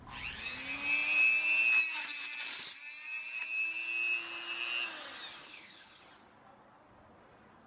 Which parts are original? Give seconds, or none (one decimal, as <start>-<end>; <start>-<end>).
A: 0.0-5.4; 6.0-7.7

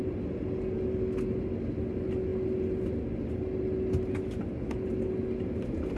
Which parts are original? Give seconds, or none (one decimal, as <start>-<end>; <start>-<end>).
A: 0.0-6.0